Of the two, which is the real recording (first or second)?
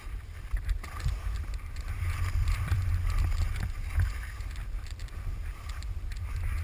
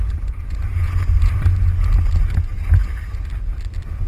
second